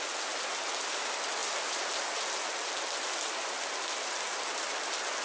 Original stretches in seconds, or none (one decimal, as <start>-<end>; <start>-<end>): 0.0-5.2